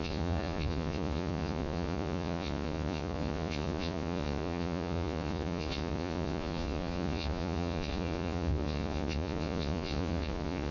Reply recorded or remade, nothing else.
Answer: remade